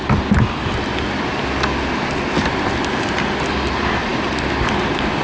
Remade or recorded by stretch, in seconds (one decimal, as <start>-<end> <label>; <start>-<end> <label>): 0.0-5.2 recorded